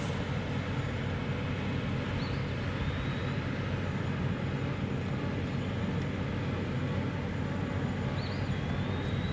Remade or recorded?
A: recorded